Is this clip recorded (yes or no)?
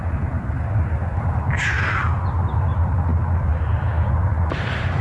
no